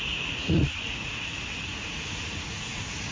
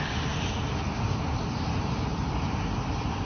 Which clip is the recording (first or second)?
second